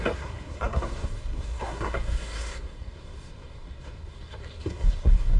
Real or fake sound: fake